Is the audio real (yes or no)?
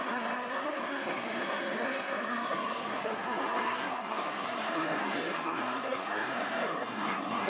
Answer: no